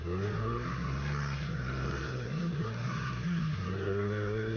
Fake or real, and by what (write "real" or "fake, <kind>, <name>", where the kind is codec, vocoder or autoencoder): fake, codec, SNAC